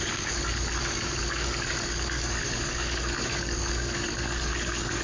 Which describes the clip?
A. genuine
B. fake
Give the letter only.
B